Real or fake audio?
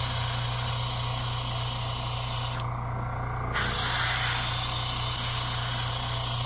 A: real